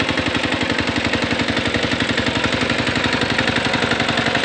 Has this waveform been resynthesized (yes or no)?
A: no